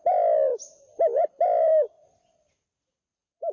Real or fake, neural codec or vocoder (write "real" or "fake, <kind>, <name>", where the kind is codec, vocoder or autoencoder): real